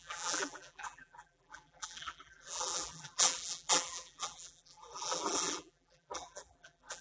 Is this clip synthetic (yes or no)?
yes